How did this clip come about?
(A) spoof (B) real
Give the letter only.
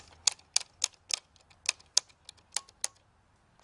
B